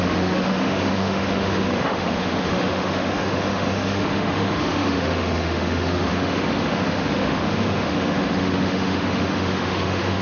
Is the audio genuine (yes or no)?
no